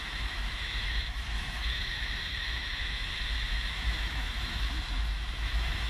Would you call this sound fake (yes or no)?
yes